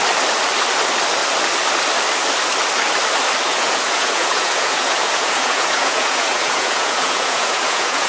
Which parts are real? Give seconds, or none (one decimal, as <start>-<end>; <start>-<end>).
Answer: 0.0-3.5